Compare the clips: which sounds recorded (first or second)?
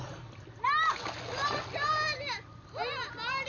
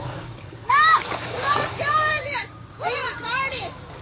first